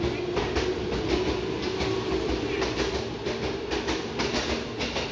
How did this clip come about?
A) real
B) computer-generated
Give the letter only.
A